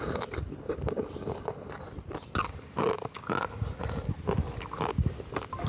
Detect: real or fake real